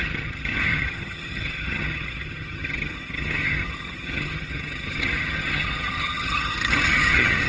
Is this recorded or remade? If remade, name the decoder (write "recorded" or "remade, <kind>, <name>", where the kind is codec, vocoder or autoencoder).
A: remade, vocoder, HiFi-GAN